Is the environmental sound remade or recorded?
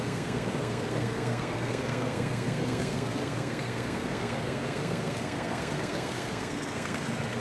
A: remade